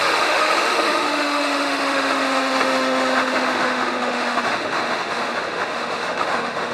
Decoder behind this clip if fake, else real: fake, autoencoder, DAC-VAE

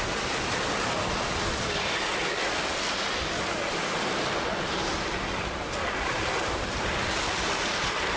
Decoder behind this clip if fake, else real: real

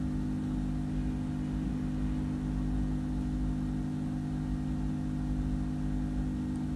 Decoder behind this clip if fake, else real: real